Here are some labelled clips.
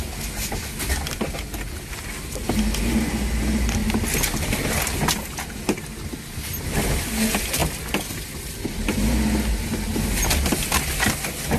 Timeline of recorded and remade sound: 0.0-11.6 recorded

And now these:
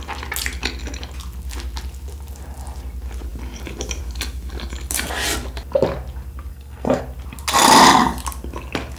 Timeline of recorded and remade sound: 0.0-6.5 recorded; 6.5-7.0 remade; 7.0-9.0 recorded

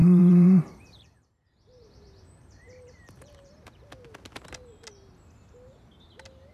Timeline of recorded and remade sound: 0.0-3.9 remade; 3.9-6.5 recorded

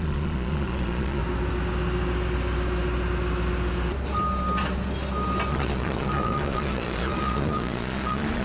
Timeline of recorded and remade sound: 0.0-1.2 remade; 1.2-5.5 recorded; 5.5-8.4 remade

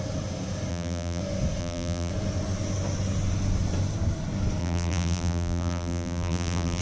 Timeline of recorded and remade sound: 0.0-0.7 recorded; 0.7-1.2 remade; 1.2-1.6 recorded; 1.6-2.1 remade; 2.1-4.6 recorded; 4.6-6.8 remade

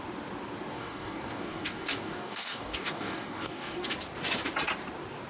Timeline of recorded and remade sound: 0.0-0.7 recorded; 0.7-3.9 remade; 3.9-5.3 recorded